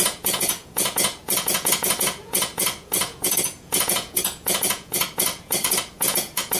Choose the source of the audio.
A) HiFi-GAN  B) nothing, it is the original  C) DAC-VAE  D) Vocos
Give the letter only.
D